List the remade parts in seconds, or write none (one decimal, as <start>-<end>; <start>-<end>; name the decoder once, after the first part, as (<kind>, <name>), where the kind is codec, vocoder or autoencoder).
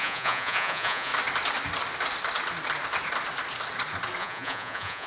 0.0-1.1 (vocoder, Vocos); 4.2-5.1